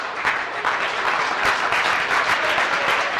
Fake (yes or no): yes